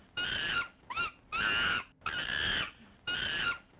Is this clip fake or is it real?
real